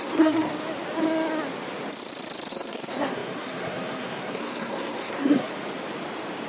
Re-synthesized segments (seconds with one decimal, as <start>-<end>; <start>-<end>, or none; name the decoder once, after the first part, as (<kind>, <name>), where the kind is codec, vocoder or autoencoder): 0.0-0.5 (codec, SNAC); 2.5-5.5